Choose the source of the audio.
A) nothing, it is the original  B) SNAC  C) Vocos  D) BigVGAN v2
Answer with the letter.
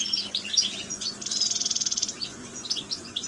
C